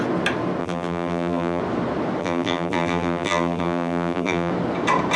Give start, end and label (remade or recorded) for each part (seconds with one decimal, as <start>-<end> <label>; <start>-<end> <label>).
0.0-0.6 recorded; 0.6-1.6 remade; 1.6-2.2 recorded; 2.2-4.5 remade; 4.5-5.2 recorded